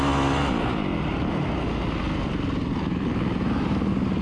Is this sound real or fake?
real